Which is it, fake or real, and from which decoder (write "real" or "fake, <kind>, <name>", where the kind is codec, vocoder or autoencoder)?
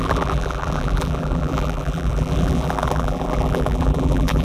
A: fake, vocoder, BigVGAN v2